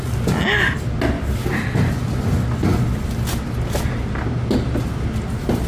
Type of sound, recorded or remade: recorded